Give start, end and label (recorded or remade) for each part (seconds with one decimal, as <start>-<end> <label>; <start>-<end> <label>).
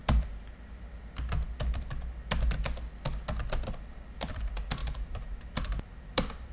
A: 0.0-4.8 recorded; 4.8-6.5 remade